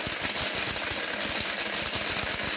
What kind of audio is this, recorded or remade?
recorded